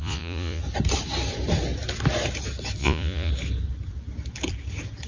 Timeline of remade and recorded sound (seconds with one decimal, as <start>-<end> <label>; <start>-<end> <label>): 0.0-0.6 remade; 0.6-2.8 recorded; 2.8-3.3 remade; 3.3-5.1 recorded